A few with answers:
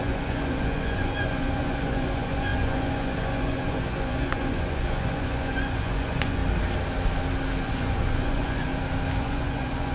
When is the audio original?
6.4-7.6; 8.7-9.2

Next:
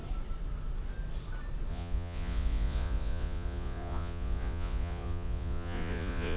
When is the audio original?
0.0-1.7

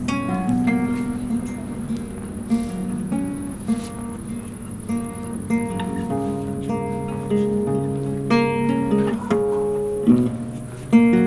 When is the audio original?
0.0-2.8; 3.8-11.3

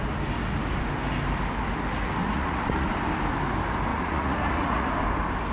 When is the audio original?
0.0-2.2; 2.9-3.9; 4.9-5.5

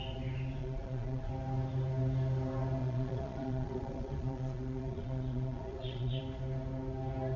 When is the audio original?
0.0-0.6; 1.3-2.8; 6.2-7.4

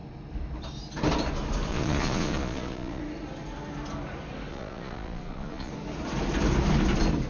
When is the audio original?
0.0-1.7; 3.0-4.5; 5.7-7.3